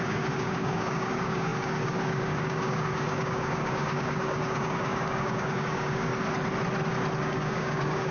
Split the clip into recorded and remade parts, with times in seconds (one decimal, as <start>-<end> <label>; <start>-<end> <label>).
0.0-6.1 remade; 6.1-7.2 recorded; 7.2-8.1 remade